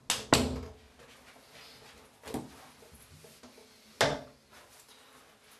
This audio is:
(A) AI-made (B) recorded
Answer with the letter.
B